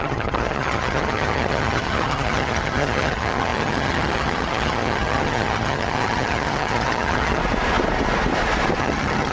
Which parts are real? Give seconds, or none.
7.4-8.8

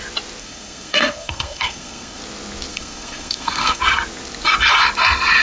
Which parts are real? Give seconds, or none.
0.0-0.4; 2.2-2.7; 3.8-5.4

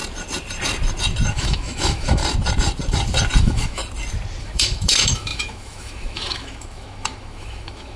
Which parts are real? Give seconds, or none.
0.0-1.3; 2.2-3.4; 3.8-4.4

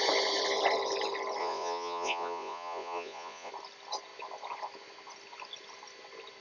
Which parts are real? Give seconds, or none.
0.0-1.4; 3.5-6.4

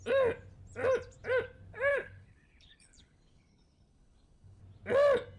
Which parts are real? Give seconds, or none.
0.0-1.9; 4.6-5.4

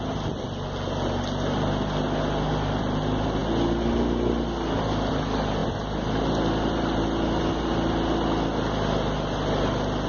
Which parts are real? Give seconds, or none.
0.0-10.1

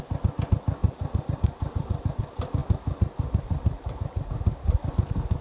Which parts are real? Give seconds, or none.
0.0-0.8; 2.2-2.6; 4.3-5.4

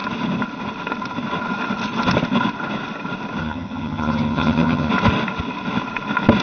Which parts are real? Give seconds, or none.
0.0-3.4; 4.9-6.4